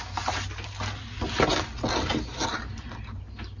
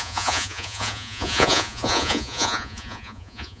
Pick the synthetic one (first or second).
second